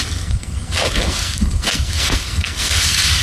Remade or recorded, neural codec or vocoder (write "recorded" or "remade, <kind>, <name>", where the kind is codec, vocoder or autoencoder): remade, codec, SNAC